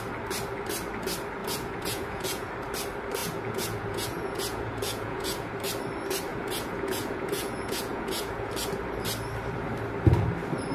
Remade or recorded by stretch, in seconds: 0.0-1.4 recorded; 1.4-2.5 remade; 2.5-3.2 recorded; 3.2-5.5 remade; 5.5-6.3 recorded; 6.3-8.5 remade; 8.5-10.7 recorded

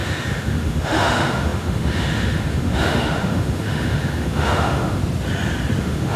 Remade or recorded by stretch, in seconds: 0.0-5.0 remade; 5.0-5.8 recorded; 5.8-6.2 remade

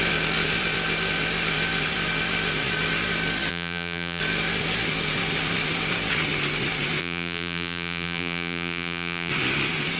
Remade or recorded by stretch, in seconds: 0.0-3.5 recorded; 3.5-4.2 remade; 4.2-7.0 recorded; 7.0-9.3 remade; 9.3-10.0 recorded

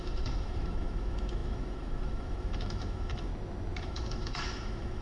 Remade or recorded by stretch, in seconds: 0.0-3.3 remade; 3.3-3.8 recorded; 3.8-5.0 remade

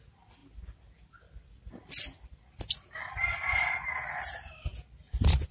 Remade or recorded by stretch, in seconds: 0.0-5.5 recorded